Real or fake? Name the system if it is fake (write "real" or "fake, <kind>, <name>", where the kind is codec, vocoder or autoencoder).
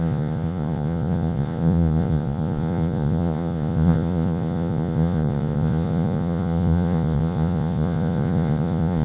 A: fake, vocoder, Vocos